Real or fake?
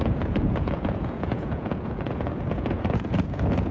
fake